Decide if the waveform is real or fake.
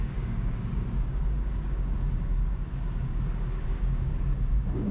fake